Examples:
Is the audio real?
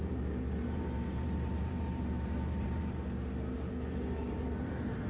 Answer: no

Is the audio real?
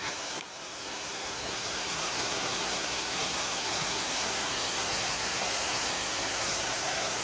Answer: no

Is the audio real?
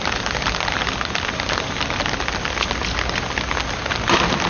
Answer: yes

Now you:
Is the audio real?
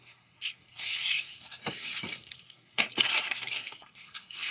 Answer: no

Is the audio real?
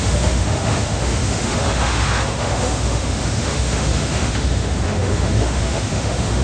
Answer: no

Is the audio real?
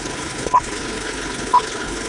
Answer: no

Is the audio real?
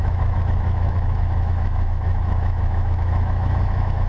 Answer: no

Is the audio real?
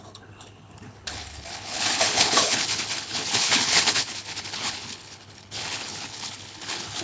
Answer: no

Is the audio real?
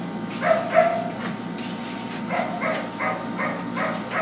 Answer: yes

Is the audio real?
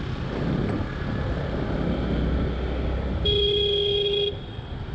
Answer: yes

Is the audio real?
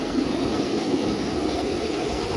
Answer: no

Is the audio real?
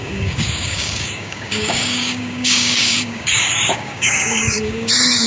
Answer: no